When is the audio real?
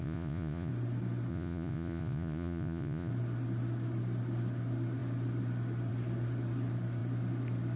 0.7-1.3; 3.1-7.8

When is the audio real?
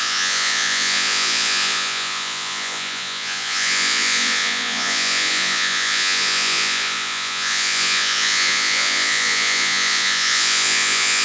none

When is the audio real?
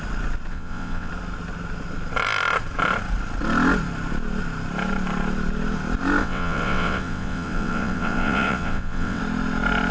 0.0-0.5; 1.1-6.2; 9.2-9.9